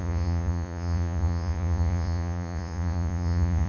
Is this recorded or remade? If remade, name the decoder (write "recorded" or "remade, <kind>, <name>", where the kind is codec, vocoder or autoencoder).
remade, vocoder, Vocos